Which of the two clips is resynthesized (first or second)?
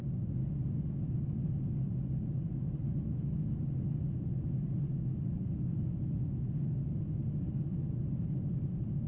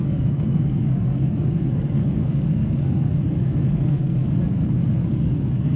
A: second